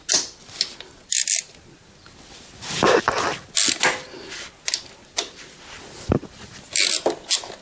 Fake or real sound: real